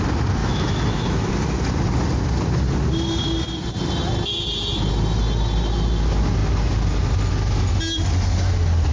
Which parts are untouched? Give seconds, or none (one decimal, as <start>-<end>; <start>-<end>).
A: 0.0-0.4; 1.3-8.9